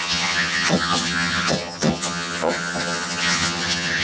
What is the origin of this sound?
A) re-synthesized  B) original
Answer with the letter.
A